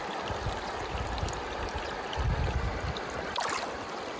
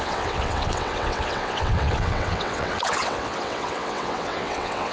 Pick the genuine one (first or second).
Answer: first